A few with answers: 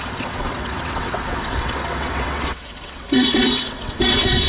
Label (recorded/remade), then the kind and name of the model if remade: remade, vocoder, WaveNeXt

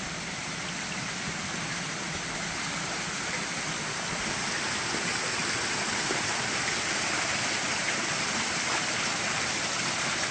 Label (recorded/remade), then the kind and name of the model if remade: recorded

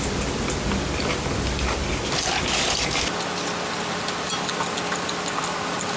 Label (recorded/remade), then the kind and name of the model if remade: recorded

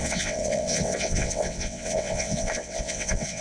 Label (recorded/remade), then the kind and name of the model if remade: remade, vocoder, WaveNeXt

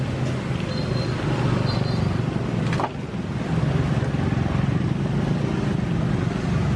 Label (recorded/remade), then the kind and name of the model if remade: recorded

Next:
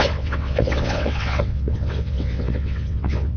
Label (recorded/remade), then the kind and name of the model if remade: remade, vocoder, WaveNeXt